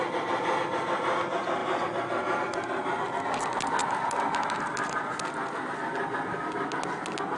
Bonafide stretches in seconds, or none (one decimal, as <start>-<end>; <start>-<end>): 0.0-1.6; 3.2-4.8; 5.6-7.4